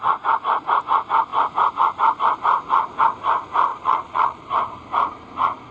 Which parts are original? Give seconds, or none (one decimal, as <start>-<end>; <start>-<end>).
0.0-3.7; 4.4-5.7